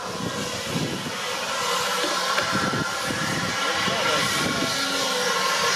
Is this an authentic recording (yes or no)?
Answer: yes